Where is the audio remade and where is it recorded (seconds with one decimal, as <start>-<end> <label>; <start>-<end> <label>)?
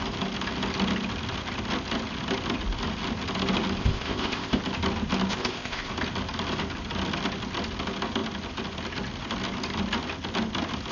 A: 0.0-3.8 recorded; 3.8-4.6 remade; 4.6-5.3 recorded; 5.3-5.9 remade; 5.9-10.9 recorded